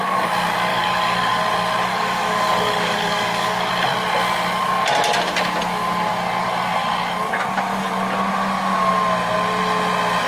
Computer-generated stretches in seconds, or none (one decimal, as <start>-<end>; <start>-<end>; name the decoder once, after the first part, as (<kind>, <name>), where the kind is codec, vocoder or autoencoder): 0.7-1.4 (codec, DAC); 1.9-3.7

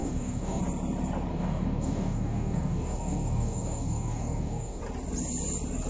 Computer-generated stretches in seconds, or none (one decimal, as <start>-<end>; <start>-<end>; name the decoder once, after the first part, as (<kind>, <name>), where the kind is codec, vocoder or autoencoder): 0.0-0.6 (codec, DAC); 1.3-4.8

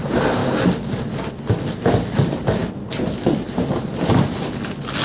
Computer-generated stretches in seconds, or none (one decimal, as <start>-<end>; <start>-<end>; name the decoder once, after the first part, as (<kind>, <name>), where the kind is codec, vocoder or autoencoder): none